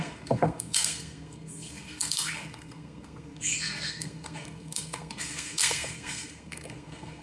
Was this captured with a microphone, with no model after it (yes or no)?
no